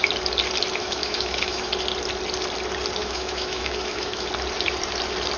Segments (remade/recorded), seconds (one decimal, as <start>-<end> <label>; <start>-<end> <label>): 0.0-0.8 recorded; 0.8-1.7 remade; 1.7-3.0 recorded; 3.0-4.3 remade; 4.3-5.4 recorded